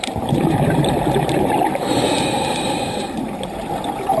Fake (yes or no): yes